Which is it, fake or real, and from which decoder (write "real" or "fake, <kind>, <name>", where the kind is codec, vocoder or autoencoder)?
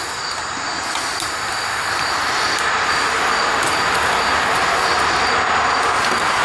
real